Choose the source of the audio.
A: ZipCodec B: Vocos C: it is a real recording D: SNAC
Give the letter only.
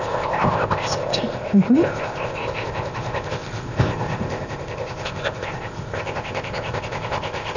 A